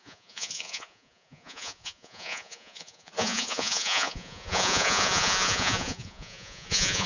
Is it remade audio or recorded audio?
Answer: remade